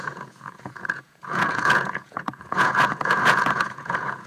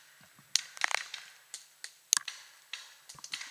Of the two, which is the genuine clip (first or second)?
second